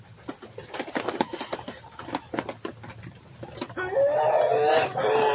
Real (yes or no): yes